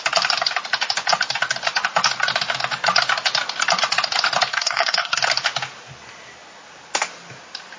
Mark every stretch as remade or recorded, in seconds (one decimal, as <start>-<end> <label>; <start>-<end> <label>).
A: 0.0-4.5 recorded; 4.5-5.2 remade; 5.2-7.8 recorded